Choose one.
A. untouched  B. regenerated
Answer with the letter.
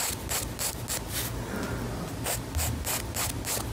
A